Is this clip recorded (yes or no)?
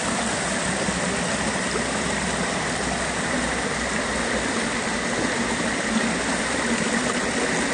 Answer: yes